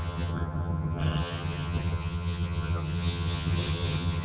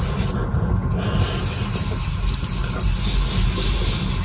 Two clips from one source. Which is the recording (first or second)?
second